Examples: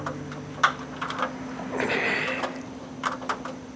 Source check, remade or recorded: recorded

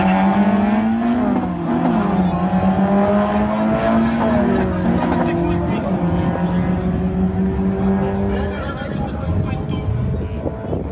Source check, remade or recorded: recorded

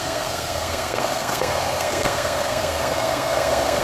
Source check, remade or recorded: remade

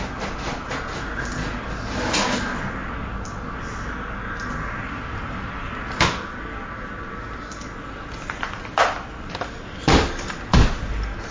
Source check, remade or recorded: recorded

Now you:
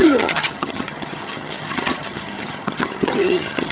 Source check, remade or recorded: remade